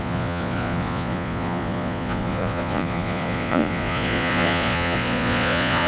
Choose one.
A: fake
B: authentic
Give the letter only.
A